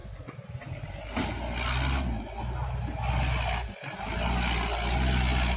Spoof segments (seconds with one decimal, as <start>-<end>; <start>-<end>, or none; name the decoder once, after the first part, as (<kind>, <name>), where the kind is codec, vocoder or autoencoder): none